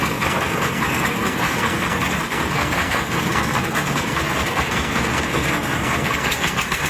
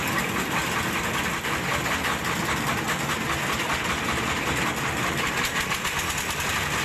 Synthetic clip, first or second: first